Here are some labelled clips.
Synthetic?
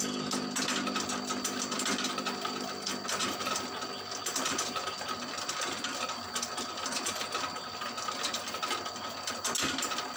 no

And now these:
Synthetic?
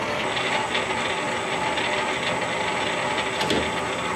no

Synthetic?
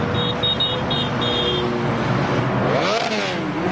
no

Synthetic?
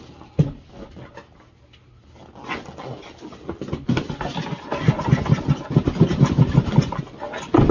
no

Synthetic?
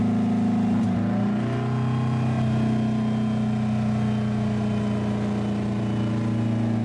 no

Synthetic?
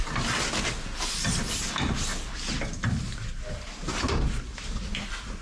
no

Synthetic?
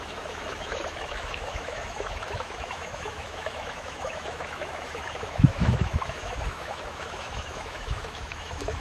yes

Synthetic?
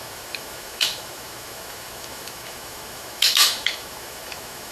yes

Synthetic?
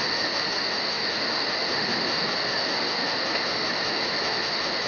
yes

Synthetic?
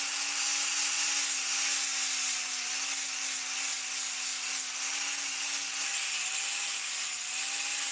no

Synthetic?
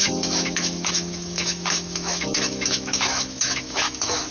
yes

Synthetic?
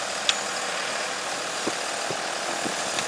no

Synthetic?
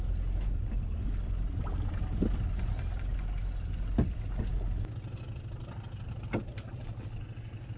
no